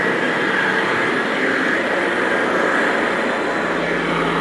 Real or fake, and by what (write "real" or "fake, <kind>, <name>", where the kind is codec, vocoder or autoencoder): real